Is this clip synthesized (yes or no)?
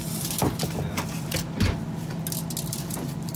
no